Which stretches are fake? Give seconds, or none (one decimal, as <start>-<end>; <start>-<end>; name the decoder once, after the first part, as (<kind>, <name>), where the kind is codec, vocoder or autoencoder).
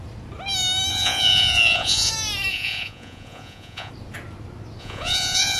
0.9-2.1 (vocoder, Vocos); 2.5-3.9; 4.8-5.6